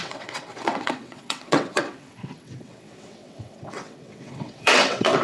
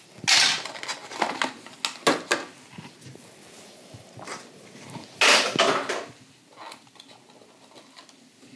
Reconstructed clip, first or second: first